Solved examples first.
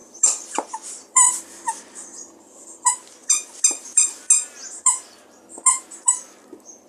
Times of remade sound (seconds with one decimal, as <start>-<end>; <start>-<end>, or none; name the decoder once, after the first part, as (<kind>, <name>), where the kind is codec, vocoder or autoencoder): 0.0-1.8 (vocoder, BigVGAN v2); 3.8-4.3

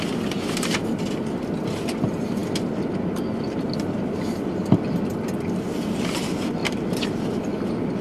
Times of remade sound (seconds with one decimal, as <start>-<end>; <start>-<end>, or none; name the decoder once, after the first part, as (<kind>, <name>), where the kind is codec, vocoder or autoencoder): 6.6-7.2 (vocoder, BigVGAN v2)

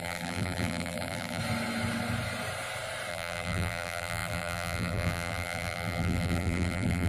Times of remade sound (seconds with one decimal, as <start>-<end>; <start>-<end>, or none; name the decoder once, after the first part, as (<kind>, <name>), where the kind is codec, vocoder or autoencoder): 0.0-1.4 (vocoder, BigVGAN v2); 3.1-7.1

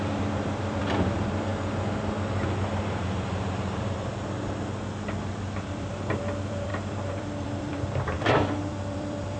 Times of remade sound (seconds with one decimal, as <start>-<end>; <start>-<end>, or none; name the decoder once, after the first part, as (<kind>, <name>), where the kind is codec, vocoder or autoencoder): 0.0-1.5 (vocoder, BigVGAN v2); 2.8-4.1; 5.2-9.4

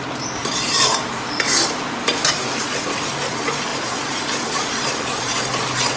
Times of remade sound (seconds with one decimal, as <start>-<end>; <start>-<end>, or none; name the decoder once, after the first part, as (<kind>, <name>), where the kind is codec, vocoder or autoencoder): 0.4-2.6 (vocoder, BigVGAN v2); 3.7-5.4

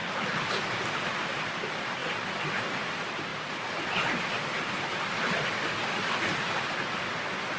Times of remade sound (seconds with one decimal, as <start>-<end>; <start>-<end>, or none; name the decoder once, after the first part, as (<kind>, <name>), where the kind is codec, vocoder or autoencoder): 0.0-0.9 (vocoder, BigVGAN v2); 2.0-2.5